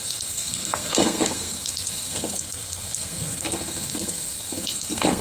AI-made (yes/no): yes